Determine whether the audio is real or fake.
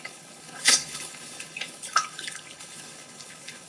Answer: fake